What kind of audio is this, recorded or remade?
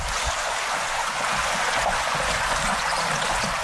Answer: remade